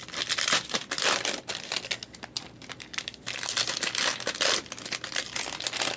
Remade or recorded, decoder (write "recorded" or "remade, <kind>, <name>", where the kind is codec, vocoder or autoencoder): recorded